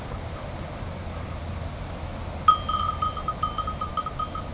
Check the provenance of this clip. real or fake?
real